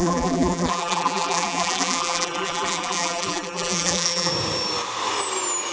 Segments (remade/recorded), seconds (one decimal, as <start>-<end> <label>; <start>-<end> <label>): 0.0-4.3 remade; 4.3-5.7 recorded

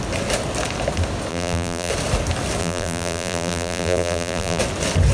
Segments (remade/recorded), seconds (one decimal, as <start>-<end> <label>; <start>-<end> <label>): 0.0-1.3 recorded; 1.3-1.9 remade; 1.9-2.6 recorded; 2.6-4.6 remade; 4.6-5.1 recorded

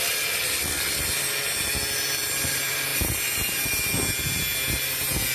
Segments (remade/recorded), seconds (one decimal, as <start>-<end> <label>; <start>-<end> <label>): 0.0-5.3 recorded

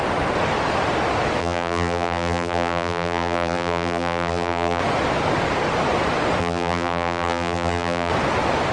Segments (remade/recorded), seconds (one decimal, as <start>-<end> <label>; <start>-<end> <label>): 0.0-1.4 recorded; 1.4-4.8 remade; 4.8-6.4 recorded; 6.4-8.1 remade; 8.1-8.7 recorded

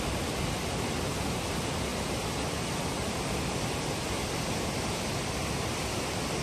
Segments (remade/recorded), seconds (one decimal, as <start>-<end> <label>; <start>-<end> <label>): 0.0-6.4 recorded